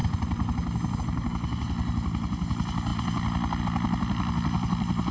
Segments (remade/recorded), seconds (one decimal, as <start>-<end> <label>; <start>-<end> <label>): 0.0-5.1 recorded